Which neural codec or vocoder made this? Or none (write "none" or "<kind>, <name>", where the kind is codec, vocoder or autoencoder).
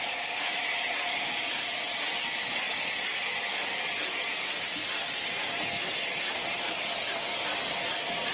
none